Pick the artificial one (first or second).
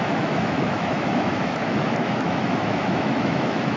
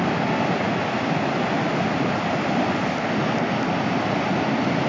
first